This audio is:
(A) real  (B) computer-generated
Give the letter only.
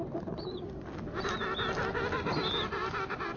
A